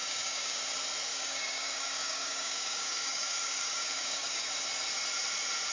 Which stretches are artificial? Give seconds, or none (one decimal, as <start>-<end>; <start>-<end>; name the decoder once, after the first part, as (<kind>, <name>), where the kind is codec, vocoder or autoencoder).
0.0-0.6 (codec, DAC); 1.1-4.5